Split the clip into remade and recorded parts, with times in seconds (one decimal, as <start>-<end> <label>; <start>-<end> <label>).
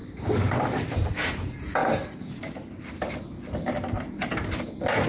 0.0-5.1 recorded